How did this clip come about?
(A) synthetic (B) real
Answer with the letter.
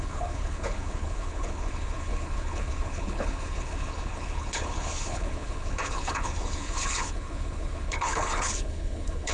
A